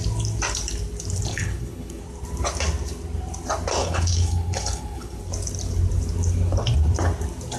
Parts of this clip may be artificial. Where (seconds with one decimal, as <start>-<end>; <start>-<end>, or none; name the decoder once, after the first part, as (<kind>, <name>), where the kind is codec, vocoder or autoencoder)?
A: 1.3-2.0 (codec, HILCodec); 3.8-5.2